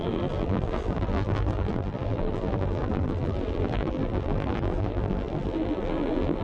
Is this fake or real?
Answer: fake